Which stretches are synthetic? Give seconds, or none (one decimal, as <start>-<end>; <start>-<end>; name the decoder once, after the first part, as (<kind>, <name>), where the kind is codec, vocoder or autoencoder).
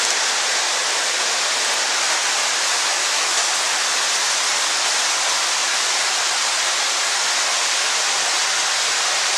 2.9-3.5 (autoencoder, DAC-VAE)